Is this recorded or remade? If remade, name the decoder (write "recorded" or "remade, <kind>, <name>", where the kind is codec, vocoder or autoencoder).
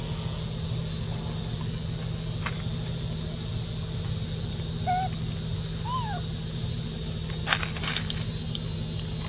recorded